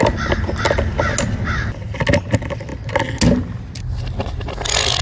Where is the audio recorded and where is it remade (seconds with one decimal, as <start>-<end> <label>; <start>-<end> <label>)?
0.0-5.0 recorded

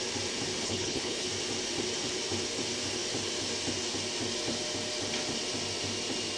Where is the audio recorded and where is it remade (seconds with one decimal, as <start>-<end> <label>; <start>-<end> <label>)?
0.0-0.6 recorded; 0.6-1.3 remade; 1.3-6.4 recorded

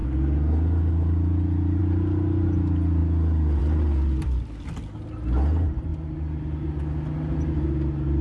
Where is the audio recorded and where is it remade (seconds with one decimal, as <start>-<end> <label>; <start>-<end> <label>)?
0.0-8.2 recorded

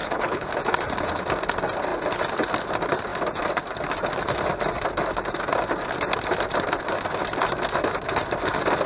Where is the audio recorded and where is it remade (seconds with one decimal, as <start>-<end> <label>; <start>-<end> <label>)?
0.0-0.5 remade; 0.5-8.9 recorded

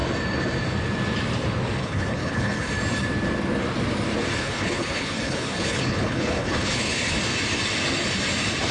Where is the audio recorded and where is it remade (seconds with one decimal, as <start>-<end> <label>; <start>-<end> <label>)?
0.0-1.8 recorded; 1.8-2.7 remade; 2.7-4.4 recorded; 4.4-7.2 remade; 7.2-8.7 recorded

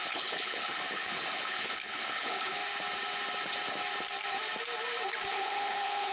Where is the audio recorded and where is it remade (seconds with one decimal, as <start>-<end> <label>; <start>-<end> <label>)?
0.0-2.6 remade; 2.6-5.3 recorded; 5.3-6.1 remade

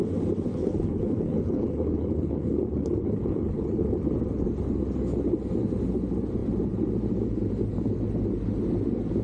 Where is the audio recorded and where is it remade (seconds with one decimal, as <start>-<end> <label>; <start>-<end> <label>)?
0.0-0.5 recorded; 0.5-4.0 remade; 4.0-9.2 recorded

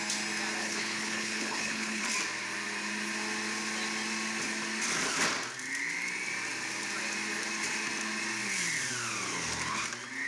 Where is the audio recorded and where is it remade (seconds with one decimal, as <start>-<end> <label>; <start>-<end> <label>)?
0.0-0.6 recorded; 0.6-2.0 remade; 2.0-10.3 recorded